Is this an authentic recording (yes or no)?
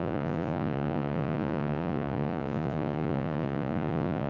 no